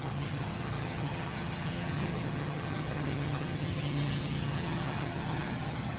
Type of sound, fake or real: fake